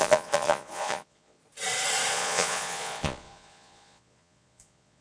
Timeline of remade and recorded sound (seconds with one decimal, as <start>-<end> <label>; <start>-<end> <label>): 0.0-1.4 remade; 1.4-2.1 recorded; 2.1-5.0 remade